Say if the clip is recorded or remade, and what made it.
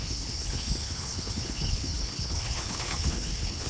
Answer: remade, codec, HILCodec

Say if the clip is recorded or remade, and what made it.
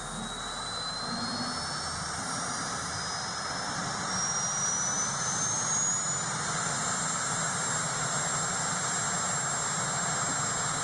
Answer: recorded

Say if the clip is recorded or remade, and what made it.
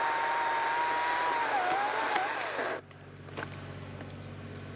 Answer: recorded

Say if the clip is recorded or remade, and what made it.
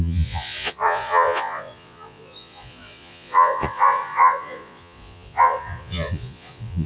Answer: remade, vocoder, Vocos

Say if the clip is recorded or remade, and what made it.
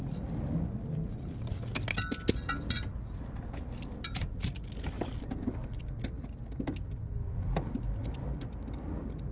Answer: recorded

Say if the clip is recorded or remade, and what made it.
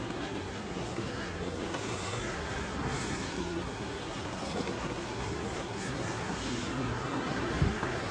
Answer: remade, codec, SNAC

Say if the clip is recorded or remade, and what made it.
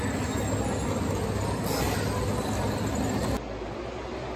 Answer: recorded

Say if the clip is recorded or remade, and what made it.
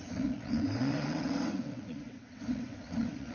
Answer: remade, vocoder, WaveNeXt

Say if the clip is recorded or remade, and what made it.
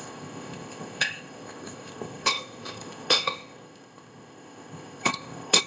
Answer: remade, codec, ZipCodec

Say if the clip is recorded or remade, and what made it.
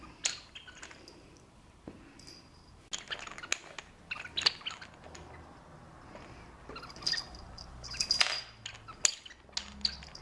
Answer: recorded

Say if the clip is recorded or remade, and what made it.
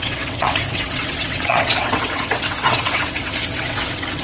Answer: remade, vocoder, WaveNeXt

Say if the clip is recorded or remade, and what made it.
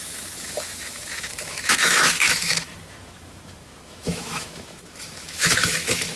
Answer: remade, autoencoder, DAC-VAE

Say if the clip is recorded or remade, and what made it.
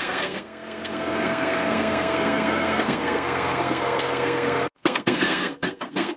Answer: remade, codec, SNAC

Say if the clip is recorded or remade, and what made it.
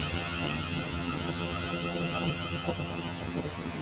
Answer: remade, vocoder, HiFi-GAN